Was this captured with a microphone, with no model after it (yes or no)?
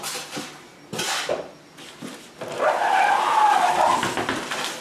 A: yes